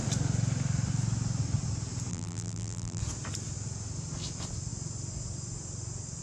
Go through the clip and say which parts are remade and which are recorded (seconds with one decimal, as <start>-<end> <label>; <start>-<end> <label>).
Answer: 0.0-2.1 recorded; 2.1-3.0 remade; 3.0-6.2 recorded